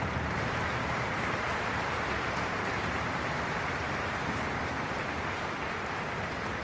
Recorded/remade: remade